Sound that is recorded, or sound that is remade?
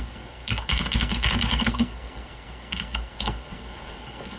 remade